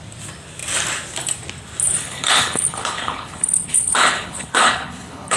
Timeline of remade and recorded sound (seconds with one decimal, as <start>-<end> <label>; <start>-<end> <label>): 0.0-2.0 recorded; 2.0-5.4 remade